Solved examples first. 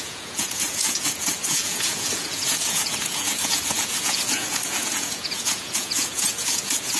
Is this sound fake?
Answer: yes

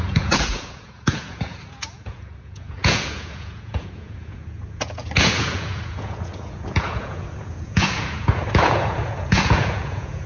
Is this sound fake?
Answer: yes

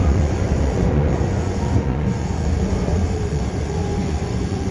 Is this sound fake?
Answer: yes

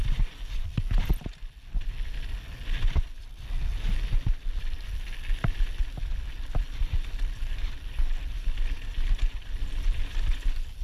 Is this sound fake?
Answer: no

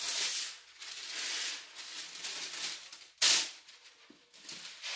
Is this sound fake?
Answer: no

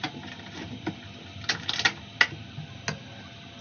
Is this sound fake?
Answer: no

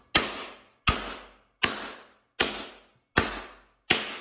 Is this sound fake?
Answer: no